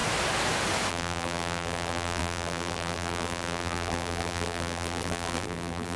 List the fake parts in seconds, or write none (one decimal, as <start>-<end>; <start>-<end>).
0.9-6.0